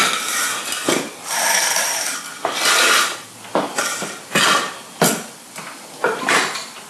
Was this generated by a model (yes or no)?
no